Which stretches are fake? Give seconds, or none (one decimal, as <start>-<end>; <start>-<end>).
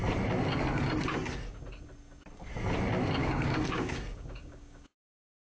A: 3.2-5.5